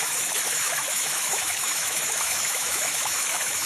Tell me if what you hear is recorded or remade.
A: remade